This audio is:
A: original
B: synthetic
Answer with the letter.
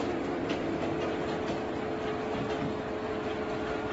A